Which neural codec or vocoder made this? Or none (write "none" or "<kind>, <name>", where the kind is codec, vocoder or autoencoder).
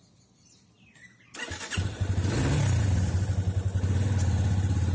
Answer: none